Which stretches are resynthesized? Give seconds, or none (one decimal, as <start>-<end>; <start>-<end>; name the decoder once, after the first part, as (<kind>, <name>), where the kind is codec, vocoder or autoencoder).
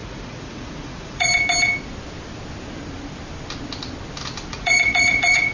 0.0-1.3 (vocoder, Vocos); 4.5-5.5